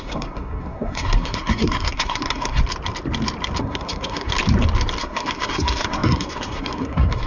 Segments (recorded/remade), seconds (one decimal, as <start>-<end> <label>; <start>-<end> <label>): 0.0-2.6 remade; 2.6-3.6 recorded; 3.6-4.3 remade; 4.3-5.0 recorded; 5.0-7.3 remade